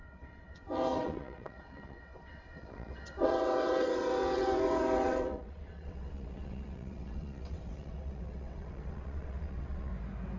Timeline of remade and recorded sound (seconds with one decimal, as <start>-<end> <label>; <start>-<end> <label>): 0.0-9.9 remade; 9.9-10.4 recorded